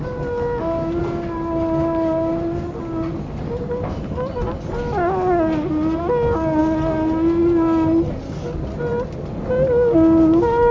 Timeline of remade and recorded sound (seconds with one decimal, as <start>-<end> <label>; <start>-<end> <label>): 0.0-10.7 recorded

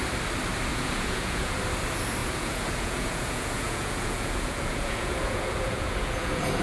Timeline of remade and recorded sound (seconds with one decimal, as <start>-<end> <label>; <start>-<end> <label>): 0.0-0.7 recorded; 0.7-1.6 remade; 1.6-2.2 recorded; 2.2-6.6 remade

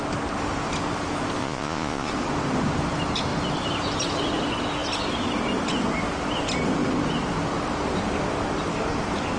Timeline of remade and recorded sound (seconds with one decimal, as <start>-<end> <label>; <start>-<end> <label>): 0.0-1.4 recorded; 1.4-2.1 remade; 2.1-9.4 recorded

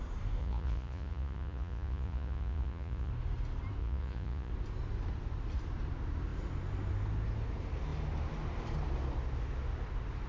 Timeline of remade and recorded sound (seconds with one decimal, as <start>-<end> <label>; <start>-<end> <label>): 0.0-0.4 recorded; 0.4-3.1 remade; 3.1-3.8 recorded; 3.8-4.5 remade; 4.5-10.3 recorded